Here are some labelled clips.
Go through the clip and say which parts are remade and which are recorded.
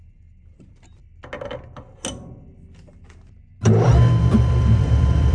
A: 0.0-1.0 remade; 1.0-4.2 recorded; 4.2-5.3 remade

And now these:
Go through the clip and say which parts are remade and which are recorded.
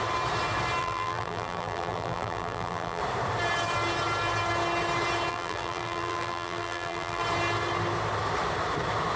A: 0.0-0.8 recorded; 0.8-3.0 remade; 3.0-5.3 recorded; 5.3-7.2 remade; 7.2-9.2 recorded